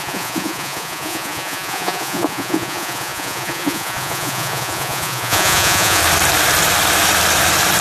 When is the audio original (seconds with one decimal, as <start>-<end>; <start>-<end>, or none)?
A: 6.0-7.8